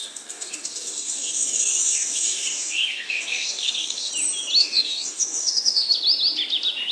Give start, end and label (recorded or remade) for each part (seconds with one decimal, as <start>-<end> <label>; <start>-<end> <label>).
0.0-4.1 remade; 4.1-4.6 recorded; 4.6-5.9 remade; 5.9-6.9 recorded